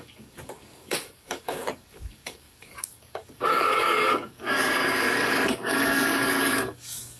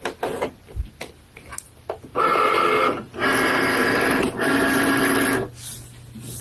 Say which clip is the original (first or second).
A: second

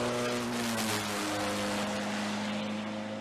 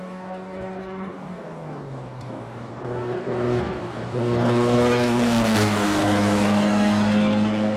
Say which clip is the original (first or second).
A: first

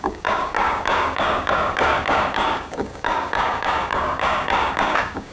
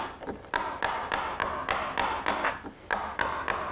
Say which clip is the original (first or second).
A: second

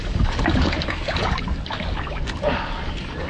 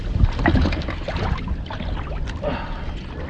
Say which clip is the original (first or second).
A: second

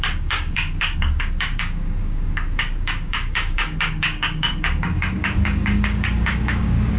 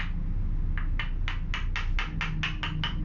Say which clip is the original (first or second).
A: second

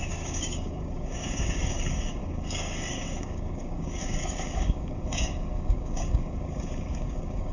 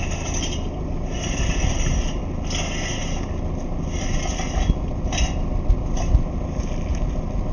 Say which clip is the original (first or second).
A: second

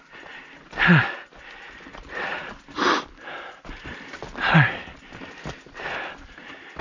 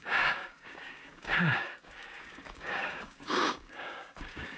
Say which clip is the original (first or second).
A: first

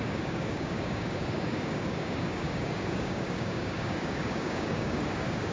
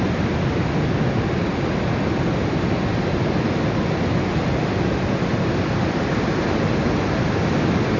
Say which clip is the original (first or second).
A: second